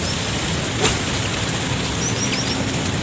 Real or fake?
real